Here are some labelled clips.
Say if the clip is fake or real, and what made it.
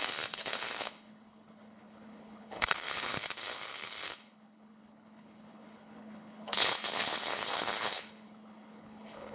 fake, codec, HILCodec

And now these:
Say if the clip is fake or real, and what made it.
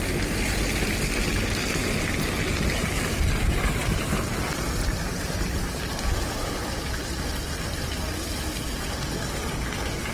real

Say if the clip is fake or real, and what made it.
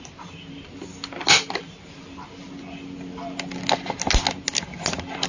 real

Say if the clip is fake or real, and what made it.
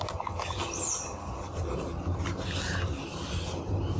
real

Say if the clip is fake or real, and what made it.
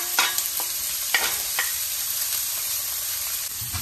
fake, vocoder, BigVGAN v2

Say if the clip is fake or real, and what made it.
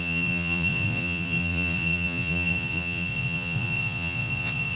fake, vocoder, Vocos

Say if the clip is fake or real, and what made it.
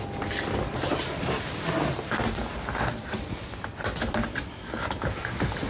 real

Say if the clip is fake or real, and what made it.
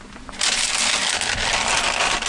real